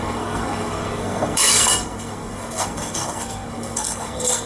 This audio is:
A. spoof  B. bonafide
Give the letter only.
A